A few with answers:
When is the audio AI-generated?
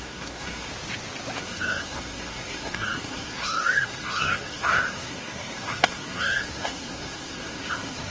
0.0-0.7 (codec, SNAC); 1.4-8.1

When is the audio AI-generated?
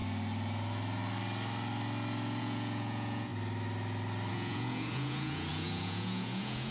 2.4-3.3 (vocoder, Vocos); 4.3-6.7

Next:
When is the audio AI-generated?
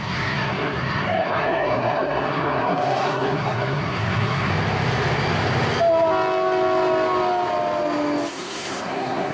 0.0-4.5 (codec, SNAC); 8.3-9.3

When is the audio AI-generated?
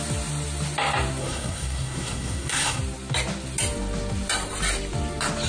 1.2-2.8 (codec, SNAC)